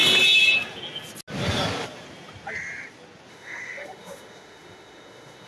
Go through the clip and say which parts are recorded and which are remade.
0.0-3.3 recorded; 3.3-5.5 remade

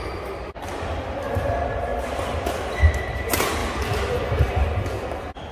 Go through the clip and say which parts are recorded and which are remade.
0.0-5.5 recorded